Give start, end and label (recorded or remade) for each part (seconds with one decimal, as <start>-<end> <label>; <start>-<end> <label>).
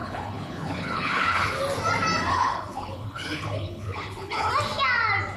0.0-1.6 remade; 1.6-2.3 recorded; 2.3-4.5 remade; 4.5-5.4 recorded